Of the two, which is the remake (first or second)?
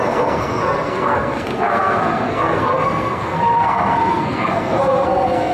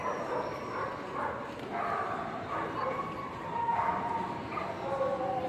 first